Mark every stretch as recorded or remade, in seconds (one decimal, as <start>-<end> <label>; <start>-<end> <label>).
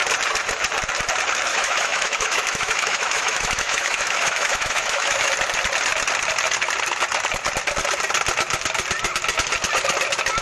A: 0.0-1.5 recorded; 1.5-5.3 remade; 5.3-10.4 recorded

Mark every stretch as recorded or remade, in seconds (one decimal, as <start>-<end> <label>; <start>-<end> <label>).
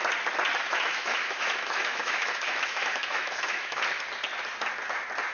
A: 0.0-0.6 recorded; 0.6-3.8 remade; 3.8-5.3 recorded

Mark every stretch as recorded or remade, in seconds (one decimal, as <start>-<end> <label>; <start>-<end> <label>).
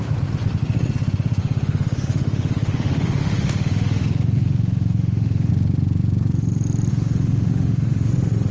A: 0.0-1.4 recorded; 1.4-5.5 remade; 5.5-6.9 recorded; 6.9-8.1 remade; 8.1-8.5 recorded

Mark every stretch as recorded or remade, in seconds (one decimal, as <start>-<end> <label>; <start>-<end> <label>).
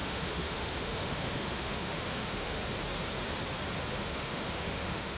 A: 0.0-2.6 remade; 2.6-3.9 recorded; 3.9-5.2 remade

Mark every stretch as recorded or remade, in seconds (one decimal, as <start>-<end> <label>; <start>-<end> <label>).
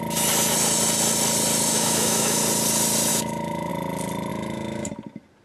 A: 0.0-1.7 recorded; 1.7-2.4 remade; 2.4-3.1 recorded; 3.1-3.7 remade; 3.7-4.3 recorded; 4.3-4.9 remade; 4.9-5.4 recorded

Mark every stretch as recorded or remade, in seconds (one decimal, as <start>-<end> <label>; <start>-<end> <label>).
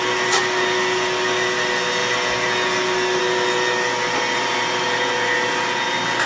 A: 0.0-6.3 recorded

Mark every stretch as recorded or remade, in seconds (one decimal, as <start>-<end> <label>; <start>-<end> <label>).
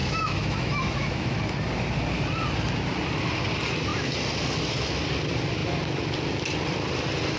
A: 0.0-1.4 remade; 1.4-7.4 recorded